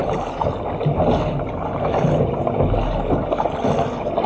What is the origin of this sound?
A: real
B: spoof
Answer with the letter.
A